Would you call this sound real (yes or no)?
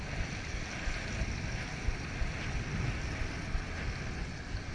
yes